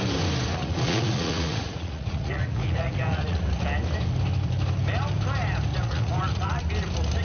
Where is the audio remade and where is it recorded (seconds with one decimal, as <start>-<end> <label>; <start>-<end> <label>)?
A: 0.0-0.5 recorded; 0.5-3.4 remade; 3.4-5.7 recorded; 5.7-6.6 remade; 6.6-7.2 recorded